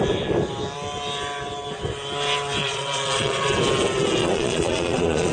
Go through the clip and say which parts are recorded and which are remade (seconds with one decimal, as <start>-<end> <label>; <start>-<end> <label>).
0.0-2.6 recorded; 2.6-3.5 remade; 3.5-4.2 recorded; 4.2-5.3 remade